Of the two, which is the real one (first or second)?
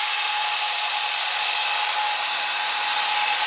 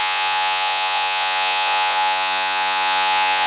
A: first